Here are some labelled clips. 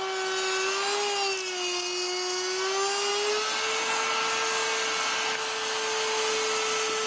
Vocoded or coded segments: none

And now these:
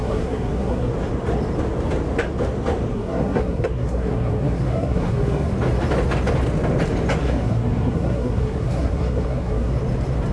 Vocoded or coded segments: 0.0-0.9 (codec, SNAC); 2.9-5.5; 7.2-9.7

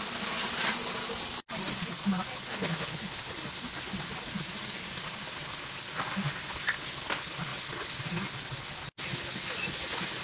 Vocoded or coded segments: 2.5-3.4 (codec, HILCodec)

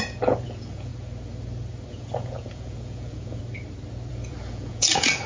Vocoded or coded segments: 0.0-0.9 (vocoder, Vocos); 1.9-3.4; 4.1-5.3

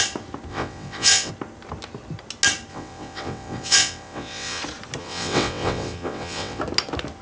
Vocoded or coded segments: 0.5-1.3 (vocoder, WaveNeXt); 2.7-4.6; 5.0-6.6

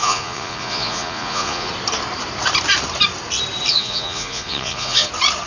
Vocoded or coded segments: 0.0-1.7 (vocoder, Vocos); 3.7-5.1